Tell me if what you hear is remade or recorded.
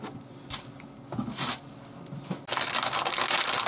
recorded